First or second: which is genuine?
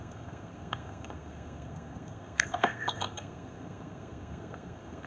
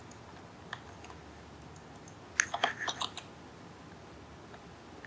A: second